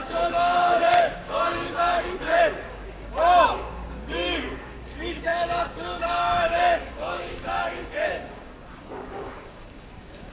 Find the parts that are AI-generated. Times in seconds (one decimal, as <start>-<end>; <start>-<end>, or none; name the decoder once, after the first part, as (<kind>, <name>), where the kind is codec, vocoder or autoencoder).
0.0-10.3 (codec, DAC)

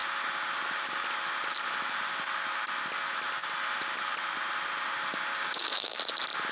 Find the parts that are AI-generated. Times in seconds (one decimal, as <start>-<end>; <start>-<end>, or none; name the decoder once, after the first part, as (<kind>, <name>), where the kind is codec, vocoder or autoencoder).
5.3-6.0 (codec, DAC)

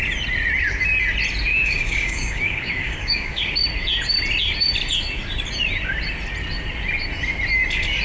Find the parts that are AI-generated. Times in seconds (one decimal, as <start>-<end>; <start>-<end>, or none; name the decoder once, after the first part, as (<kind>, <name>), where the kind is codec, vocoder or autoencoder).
1.5-3.4 (codec, DAC)